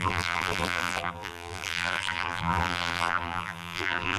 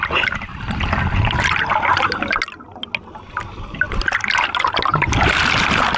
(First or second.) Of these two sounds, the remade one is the first